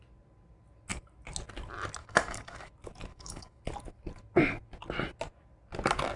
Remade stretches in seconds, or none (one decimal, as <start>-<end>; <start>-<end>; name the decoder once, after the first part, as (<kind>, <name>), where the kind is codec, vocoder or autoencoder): 2.0-2.7 (codec, DAC); 3.1-3.6